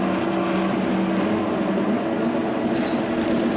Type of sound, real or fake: real